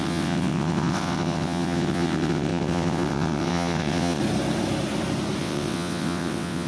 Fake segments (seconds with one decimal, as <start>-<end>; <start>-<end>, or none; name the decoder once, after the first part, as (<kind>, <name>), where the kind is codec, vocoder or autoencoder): 0.0-4.2 (vocoder, WaveNeXt); 5.4-6.7